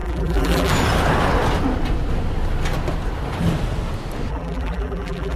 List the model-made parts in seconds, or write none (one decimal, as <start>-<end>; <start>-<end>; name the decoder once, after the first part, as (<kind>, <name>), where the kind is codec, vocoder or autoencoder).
0.0-0.7 (vocoder, BigVGAN v2); 4.3-5.4